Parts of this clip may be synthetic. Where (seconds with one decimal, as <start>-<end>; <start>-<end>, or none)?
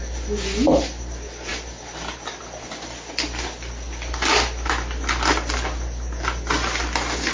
none